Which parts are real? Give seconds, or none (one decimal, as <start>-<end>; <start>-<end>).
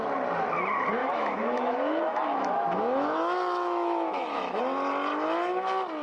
0.0-1.0; 4.6-6.0